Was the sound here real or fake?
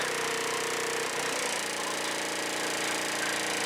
real